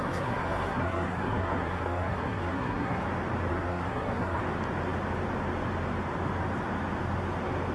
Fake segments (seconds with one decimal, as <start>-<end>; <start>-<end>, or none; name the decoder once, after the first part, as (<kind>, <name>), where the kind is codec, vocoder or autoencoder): 0.0-3.0 (codec, SNAC); 3.5-4.4